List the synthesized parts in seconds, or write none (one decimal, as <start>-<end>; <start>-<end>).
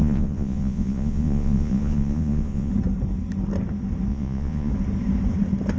0.0-2.7; 4.1-4.7